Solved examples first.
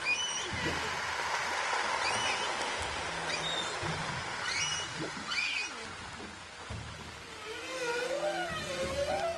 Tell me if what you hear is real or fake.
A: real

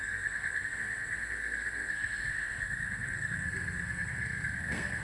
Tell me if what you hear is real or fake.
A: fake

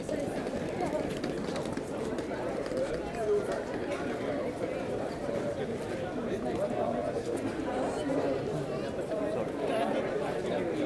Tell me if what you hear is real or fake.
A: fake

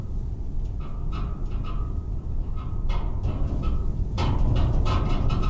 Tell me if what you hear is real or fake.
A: real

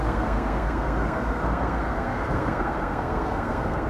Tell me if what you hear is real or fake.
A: fake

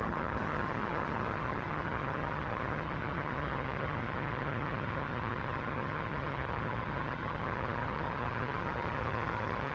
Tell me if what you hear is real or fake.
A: fake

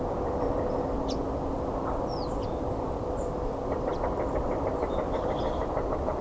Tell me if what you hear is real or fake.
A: real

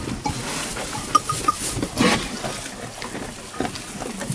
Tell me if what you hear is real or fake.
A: real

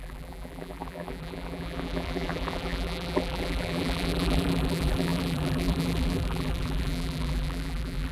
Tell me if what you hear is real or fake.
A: fake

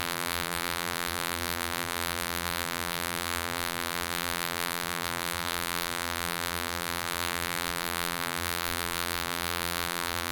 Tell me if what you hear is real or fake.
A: fake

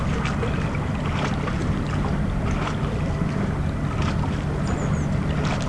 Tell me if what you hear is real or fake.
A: real